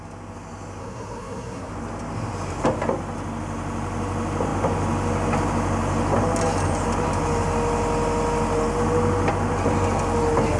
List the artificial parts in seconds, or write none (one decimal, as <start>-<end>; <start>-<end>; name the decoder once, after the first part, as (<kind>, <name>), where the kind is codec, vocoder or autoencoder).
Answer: 0.8-1.7 (codec, SNAC)